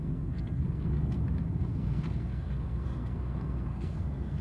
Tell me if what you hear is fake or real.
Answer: fake